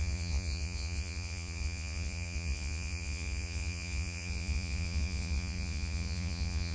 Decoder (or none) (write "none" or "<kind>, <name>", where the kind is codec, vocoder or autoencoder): vocoder, Vocos